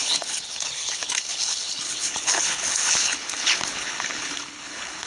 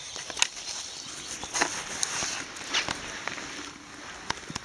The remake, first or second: first